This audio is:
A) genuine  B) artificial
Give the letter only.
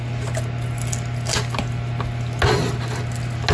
A